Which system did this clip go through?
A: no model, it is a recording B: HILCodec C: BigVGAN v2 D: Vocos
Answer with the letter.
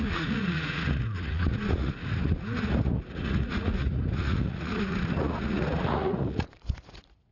D